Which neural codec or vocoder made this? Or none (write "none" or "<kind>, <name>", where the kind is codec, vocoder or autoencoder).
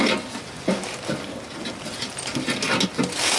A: none